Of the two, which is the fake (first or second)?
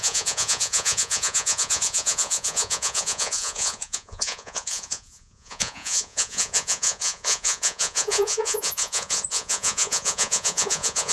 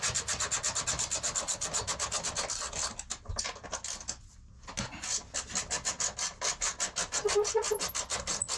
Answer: first